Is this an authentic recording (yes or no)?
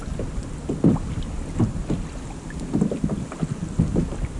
yes